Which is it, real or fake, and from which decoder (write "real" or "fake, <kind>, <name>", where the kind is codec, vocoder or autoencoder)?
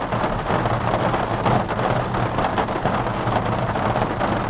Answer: real